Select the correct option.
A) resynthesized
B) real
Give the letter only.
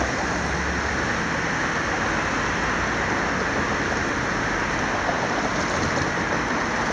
B